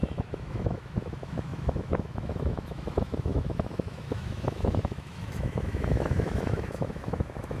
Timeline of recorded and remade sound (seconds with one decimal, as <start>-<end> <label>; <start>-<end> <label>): 0.0-7.6 remade